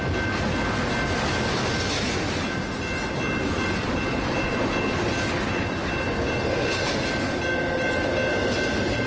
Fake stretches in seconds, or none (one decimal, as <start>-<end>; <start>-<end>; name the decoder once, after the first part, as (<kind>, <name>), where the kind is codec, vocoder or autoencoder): none